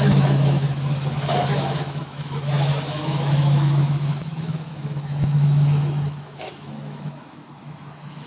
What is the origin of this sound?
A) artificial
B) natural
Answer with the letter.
A